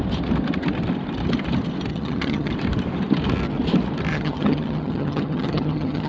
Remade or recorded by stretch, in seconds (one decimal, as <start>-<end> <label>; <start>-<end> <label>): 0.0-1.9 recorded; 1.9-2.5 remade; 2.5-4.1 recorded; 4.1-6.1 remade